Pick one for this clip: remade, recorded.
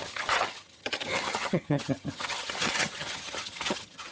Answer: remade